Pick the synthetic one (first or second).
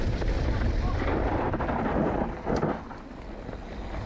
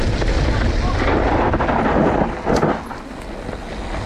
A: first